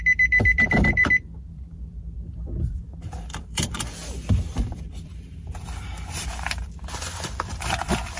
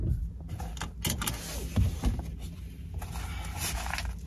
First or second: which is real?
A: second